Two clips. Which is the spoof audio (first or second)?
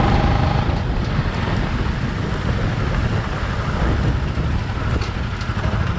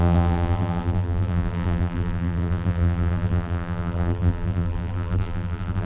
second